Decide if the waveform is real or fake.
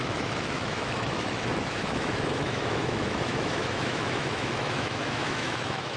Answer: fake